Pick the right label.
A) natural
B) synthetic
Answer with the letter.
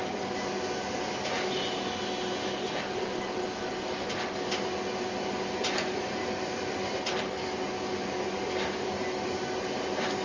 A